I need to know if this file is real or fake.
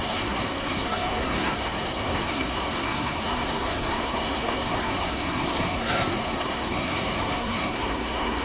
fake